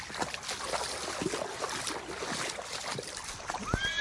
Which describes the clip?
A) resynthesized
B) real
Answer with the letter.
B